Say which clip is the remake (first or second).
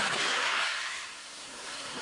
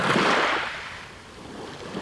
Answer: first